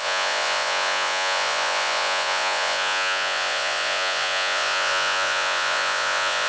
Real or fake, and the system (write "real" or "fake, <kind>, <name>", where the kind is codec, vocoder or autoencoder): fake, vocoder, Vocos